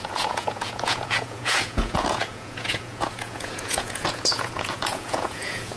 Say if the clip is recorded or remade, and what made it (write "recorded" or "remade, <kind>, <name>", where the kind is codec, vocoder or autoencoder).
remade, vocoder, Vocos